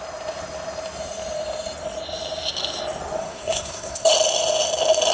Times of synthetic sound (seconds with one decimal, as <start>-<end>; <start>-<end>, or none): 3.2-4.1